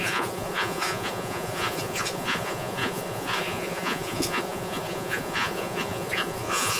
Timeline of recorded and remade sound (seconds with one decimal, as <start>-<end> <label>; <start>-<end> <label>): 0.0-6.8 remade